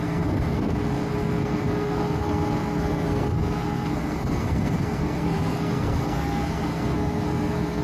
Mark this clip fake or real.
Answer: fake